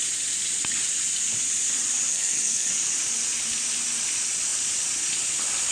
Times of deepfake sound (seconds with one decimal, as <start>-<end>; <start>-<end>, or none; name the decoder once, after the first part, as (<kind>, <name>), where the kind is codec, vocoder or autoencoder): 2.1-2.7 (codec, SNAC)